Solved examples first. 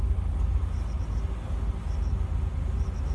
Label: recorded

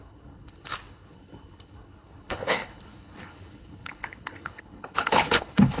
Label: remade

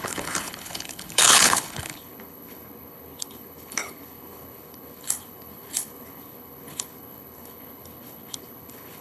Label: remade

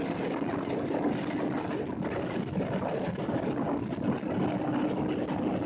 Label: recorded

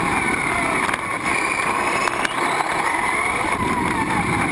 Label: recorded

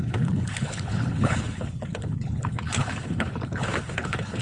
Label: remade